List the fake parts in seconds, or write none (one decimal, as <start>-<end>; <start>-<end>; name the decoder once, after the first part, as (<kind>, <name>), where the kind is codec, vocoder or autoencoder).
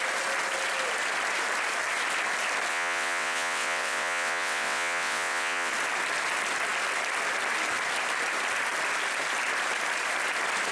2.7-5.7 (vocoder, WaveNeXt)